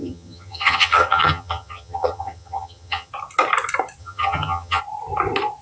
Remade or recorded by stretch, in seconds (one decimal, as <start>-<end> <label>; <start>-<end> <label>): 0.0-3.1 remade; 3.1-4.0 recorded; 4.0-4.8 remade; 4.8-5.6 recorded